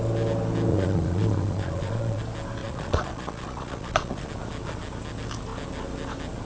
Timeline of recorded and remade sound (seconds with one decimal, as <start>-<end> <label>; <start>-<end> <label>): 0.0-0.7 recorded; 0.7-2.2 remade; 2.2-2.6 recorded; 2.6-4.3 remade; 4.3-6.4 recorded